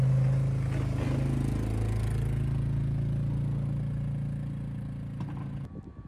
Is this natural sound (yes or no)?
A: yes